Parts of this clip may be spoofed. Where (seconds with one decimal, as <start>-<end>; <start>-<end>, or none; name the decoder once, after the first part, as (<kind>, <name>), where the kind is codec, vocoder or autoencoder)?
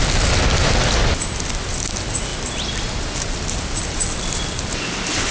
none